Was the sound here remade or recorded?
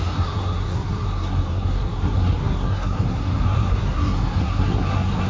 remade